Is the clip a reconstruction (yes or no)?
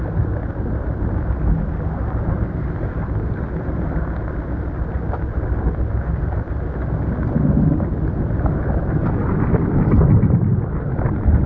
no